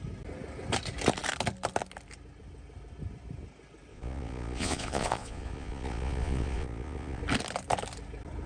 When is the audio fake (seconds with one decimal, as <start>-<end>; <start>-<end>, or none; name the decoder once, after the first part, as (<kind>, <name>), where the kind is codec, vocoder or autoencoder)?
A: 3.9-7.2 (vocoder, Vocos)